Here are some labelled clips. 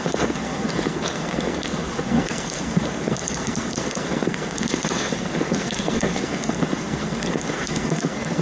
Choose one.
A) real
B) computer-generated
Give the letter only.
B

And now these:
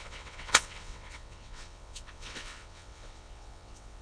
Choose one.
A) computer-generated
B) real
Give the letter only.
A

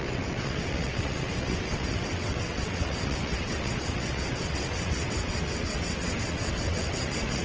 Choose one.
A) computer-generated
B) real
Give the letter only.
A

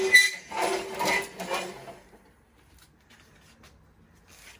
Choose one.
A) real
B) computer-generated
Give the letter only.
A